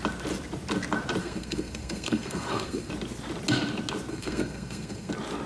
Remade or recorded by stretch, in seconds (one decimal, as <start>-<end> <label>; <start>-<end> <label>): 0.0-1.2 recorded; 1.2-2.9 remade; 2.9-4.1 recorded; 4.1-5.1 remade; 5.1-5.5 recorded